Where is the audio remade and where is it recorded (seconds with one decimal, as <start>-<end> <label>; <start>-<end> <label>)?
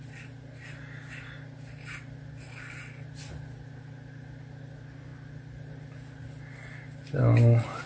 0.0-7.9 recorded